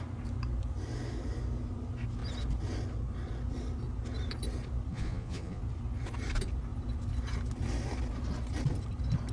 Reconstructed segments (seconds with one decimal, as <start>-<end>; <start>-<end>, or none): 4.9-5.6